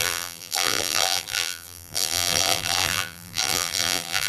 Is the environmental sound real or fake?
fake